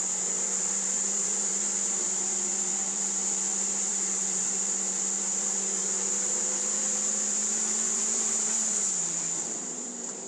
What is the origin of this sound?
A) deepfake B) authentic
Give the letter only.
A